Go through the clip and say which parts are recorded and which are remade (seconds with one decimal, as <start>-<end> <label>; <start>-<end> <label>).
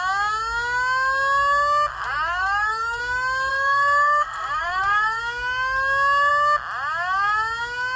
0.0-1.9 recorded; 1.9-3.0 remade; 3.0-3.5 recorded; 3.5-5.2 remade; 5.2-8.0 recorded